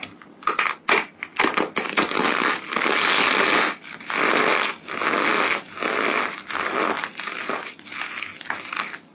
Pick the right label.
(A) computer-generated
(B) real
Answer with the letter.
B